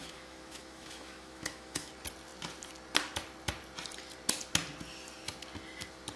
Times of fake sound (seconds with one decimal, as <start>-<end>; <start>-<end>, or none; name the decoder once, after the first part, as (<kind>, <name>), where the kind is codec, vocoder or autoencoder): 0.0-1.9 (autoencoder, DAC-VAE)